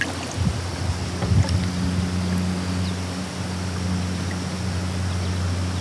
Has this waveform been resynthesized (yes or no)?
no